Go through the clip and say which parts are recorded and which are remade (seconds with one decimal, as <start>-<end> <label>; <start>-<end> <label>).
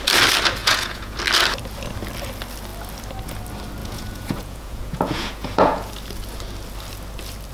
0.0-0.6 recorded; 0.6-1.2 remade; 1.2-3.8 recorded; 3.8-5.9 remade; 5.9-7.5 recorded